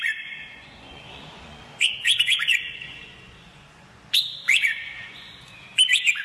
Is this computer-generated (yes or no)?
yes